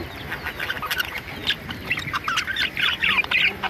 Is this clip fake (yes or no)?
no